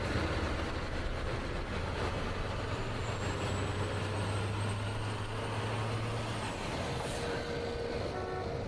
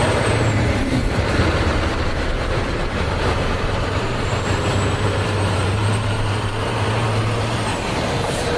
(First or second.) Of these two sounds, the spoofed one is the second